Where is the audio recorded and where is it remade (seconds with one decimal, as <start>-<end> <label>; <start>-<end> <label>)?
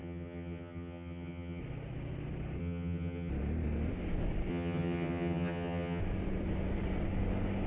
0.0-1.6 remade; 1.6-2.6 recorded; 2.6-3.3 remade; 3.3-4.5 recorded; 4.5-6.0 remade; 6.0-7.7 recorded